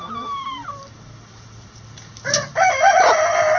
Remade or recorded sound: recorded